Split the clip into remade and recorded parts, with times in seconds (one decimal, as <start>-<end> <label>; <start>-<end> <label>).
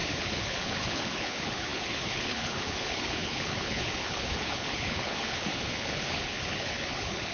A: 0.0-7.3 remade